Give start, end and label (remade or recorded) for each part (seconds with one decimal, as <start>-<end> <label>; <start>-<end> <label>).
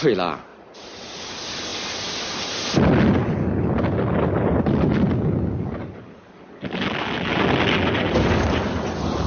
0.0-0.5 recorded; 0.5-1.2 remade; 1.2-9.3 recorded